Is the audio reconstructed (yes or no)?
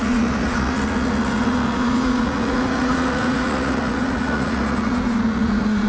yes